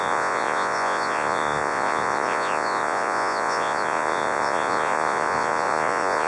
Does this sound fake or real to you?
fake